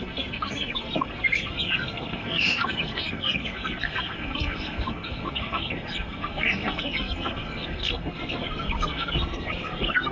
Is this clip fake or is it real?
fake